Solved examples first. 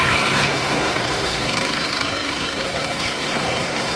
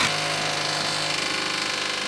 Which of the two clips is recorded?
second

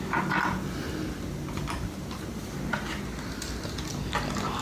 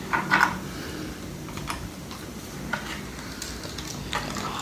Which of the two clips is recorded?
first